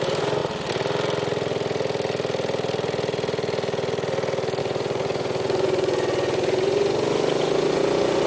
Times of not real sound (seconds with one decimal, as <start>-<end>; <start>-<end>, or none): 0.0-0.4; 4.6-8.3